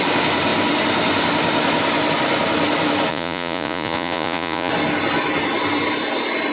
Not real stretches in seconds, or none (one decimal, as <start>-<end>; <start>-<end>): 3.1-4.7